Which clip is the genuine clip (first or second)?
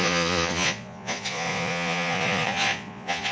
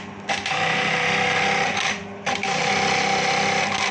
second